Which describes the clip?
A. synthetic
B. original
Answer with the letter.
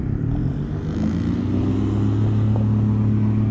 B